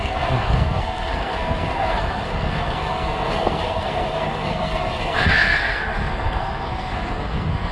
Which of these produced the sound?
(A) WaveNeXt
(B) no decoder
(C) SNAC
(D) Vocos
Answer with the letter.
C